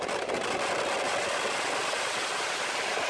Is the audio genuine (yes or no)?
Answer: yes